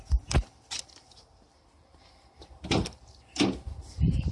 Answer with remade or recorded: remade